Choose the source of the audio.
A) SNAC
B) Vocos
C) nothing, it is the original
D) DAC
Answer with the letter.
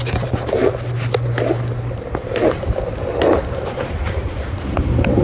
C